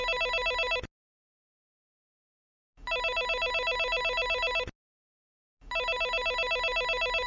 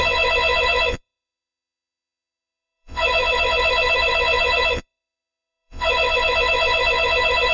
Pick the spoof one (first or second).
second